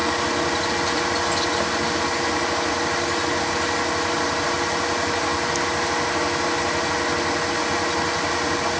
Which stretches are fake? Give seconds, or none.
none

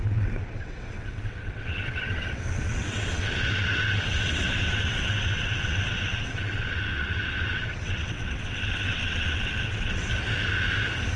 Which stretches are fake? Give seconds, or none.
0.0-10.1 (vocoder, WaveNeXt)

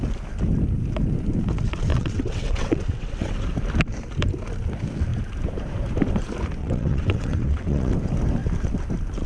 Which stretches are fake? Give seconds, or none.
1.9-3.3 (vocoder, WaveNeXt); 6.6-7.9

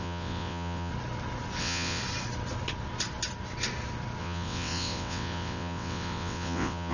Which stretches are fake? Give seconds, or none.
0.0-0.9 (vocoder, WaveNeXt); 1.6-2.0; 4.2-6.9